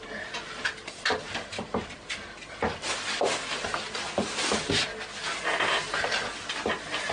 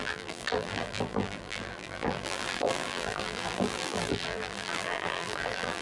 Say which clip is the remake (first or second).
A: second